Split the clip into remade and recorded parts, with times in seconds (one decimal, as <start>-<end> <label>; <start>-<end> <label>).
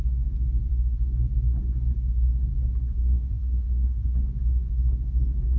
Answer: 0.0-3.0 recorded; 3.0-4.1 remade; 4.1-5.6 recorded